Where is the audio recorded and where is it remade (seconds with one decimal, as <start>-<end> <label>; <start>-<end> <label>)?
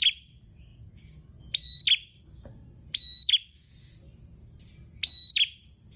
0.0-6.0 recorded